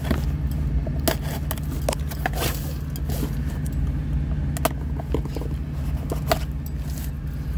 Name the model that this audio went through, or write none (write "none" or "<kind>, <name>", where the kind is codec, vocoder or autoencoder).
none